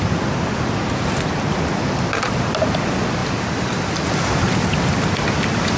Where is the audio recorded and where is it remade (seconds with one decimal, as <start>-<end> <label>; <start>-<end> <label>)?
0.0-5.8 recorded